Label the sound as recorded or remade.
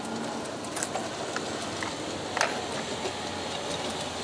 recorded